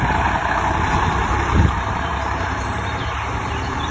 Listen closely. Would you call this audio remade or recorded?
remade